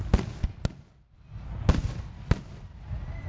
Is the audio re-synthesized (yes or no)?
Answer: no